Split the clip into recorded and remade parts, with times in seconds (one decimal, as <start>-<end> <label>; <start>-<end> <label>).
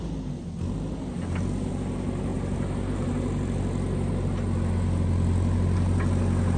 0.0-2.3 recorded; 2.3-3.6 remade; 3.6-6.6 recorded